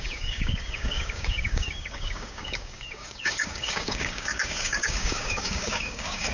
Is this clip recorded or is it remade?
remade